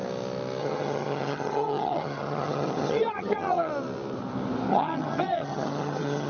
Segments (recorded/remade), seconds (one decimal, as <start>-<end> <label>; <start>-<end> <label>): 0.0-0.6 recorded; 0.6-3.7 remade; 3.7-4.7 recorded; 4.7-6.3 remade

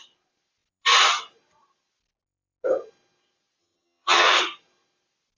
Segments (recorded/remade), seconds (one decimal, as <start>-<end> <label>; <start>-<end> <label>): 0.0-3.6 recorded; 3.6-4.4 remade; 4.4-5.4 recorded

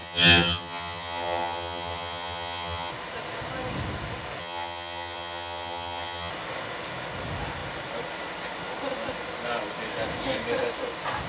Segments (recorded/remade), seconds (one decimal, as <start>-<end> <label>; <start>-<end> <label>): 0.0-2.9 remade; 2.9-4.4 recorded; 4.4-6.3 remade; 6.3-11.3 recorded